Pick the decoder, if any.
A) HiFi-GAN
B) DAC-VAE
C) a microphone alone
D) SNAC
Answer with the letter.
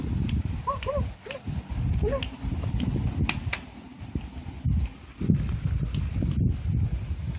C